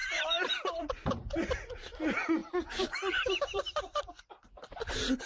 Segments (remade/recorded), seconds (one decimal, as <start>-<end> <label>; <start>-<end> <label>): 0.0-1.1 remade; 1.1-2.4 recorded; 2.4-4.0 remade; 4.0-5.3 recorded